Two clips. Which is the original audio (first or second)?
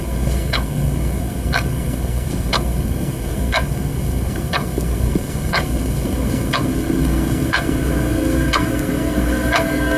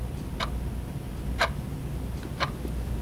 second